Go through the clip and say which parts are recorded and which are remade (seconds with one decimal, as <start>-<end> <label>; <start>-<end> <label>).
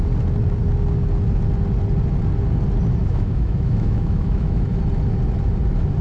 0.0-3.0 recorded; 3.0-4.8 remade; 4.8-6.0 recorded